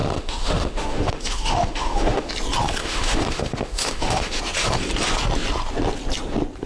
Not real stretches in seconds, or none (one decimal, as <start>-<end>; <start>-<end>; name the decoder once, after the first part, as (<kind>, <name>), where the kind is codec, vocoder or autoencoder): 0.0-2.3 (autoencoder, DAC-VAE); 2.8-4.4